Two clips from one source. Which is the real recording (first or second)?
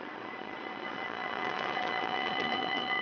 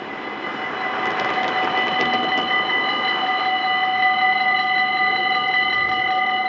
second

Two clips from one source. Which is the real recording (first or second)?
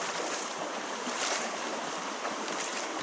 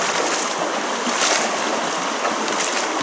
second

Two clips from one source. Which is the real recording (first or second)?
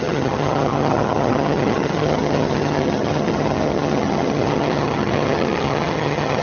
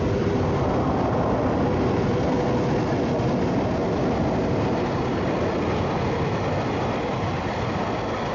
second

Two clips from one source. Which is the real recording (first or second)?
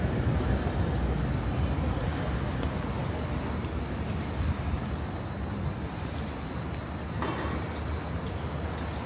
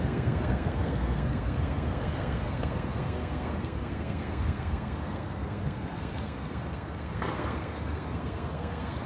first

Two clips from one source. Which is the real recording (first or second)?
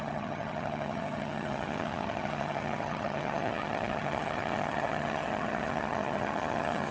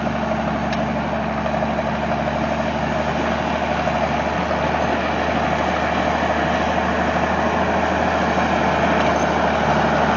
second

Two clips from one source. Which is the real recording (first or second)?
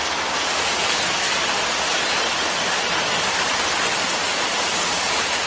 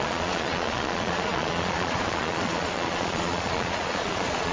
first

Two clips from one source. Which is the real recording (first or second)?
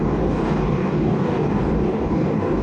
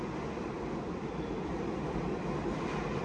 second